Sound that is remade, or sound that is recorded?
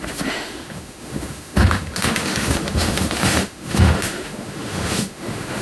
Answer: remade